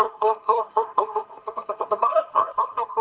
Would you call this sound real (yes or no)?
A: no